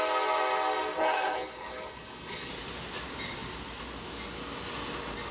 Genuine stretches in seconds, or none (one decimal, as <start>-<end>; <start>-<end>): 0.0-1.0; 2.5-5.3